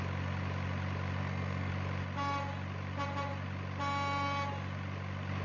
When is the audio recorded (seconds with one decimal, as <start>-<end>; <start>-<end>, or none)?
0.0-1.2; 1.7-5.4